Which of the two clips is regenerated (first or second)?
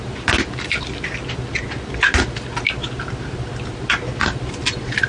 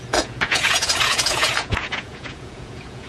second